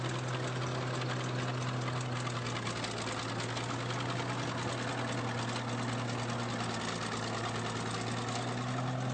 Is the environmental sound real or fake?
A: real